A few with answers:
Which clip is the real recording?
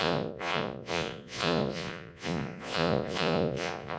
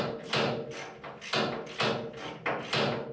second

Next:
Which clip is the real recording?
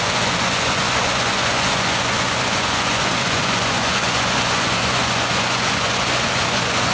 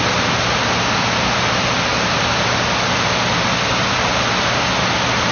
second